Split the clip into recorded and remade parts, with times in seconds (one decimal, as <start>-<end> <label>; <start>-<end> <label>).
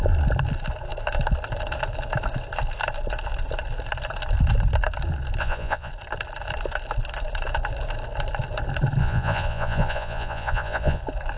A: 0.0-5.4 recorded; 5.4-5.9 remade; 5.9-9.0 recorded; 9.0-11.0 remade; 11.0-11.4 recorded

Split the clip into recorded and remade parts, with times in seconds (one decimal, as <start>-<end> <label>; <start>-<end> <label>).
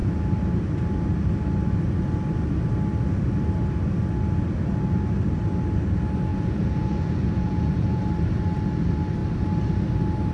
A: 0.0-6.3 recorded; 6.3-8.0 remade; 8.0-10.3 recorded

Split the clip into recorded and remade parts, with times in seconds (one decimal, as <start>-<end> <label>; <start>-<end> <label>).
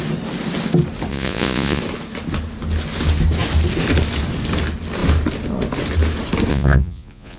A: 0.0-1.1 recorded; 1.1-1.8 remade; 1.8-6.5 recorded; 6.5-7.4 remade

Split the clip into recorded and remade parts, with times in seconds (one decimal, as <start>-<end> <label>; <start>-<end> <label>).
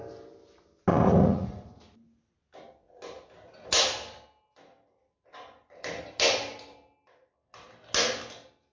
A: 0.0-0.9 recorded; 0.9-1.8 remade; 1.8-8.7 recorded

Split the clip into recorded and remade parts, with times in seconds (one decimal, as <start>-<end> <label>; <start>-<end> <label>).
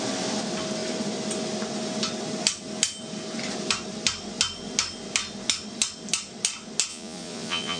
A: 0.0-6.9 recorded; 6.9-7.8 remade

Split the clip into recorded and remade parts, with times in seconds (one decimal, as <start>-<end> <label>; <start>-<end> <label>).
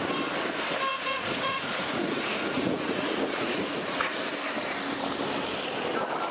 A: 0.0-0.9 recorded; 0.9-4.2 remade; 4.2-6.3 recorded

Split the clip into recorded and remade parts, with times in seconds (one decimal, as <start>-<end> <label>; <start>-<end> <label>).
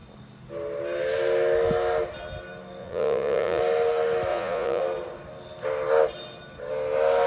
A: 0.0-2.8 recorded; 2.8-3.6 remade; 3.6-4.3 recorded; 4.3-4.8 remade; 4.8-7.3 recorded